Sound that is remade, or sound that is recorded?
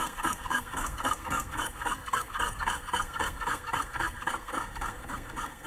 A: remade